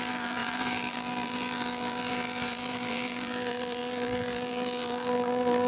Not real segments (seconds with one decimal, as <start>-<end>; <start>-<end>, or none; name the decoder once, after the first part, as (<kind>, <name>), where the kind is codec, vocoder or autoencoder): 0.0-5.7 (vocoder, BigVGAN v2)